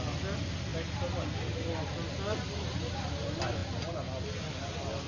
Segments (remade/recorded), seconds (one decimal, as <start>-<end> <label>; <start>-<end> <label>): 0.0-5.1 recorded